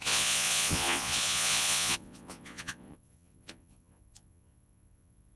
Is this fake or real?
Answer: fake